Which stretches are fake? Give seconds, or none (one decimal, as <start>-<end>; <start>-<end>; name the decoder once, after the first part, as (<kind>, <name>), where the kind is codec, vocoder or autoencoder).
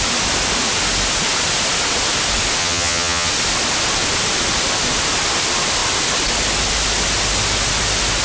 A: 2.6-3.3 (vocoder, HiFi-GAN)